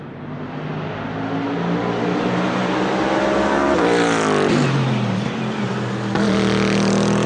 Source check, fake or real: real